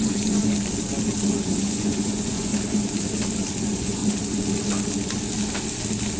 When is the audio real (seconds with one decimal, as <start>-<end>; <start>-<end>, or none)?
0.4-1.3; 2.5-3.6; 4.0-6.2